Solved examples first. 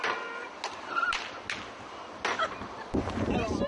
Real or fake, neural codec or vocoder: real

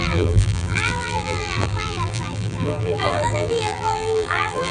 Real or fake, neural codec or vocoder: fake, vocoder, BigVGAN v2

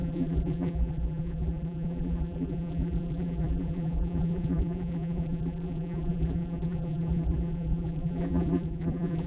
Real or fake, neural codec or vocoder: fake, vocoder, BigVGAN v2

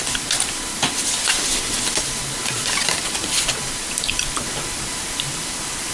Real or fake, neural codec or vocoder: fake, vocoder, BigVGAN v2